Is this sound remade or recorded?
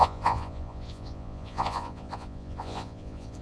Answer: remade